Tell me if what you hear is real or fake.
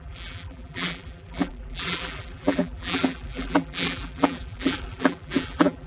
fake